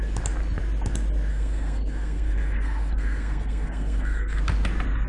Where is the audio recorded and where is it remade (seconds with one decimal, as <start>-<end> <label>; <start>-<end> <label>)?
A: 0.0-1.3 recorded; 1.3-4.4 remade; 4.4-5.1 recorded